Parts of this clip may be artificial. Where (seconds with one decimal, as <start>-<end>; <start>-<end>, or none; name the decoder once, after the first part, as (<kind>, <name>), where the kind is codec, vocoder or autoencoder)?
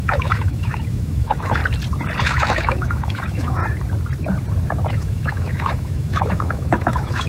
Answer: 0.0-1.6 (autoencoder, DAC-VAE); 2.2-3.6; 4.9-7.3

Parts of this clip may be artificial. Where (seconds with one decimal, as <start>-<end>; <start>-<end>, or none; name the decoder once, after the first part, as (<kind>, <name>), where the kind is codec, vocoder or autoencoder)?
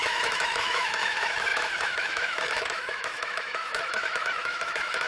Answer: 0.0-5.1 (autoencoder, DAC-VAE)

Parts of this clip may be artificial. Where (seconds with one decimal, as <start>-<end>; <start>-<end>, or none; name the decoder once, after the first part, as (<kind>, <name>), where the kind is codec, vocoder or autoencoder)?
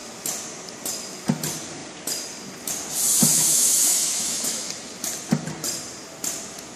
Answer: 3.3-4.7 (autoencoder, DAC-VAE)